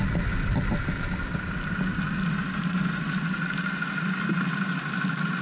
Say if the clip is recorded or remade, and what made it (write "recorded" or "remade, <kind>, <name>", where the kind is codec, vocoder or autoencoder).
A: recorded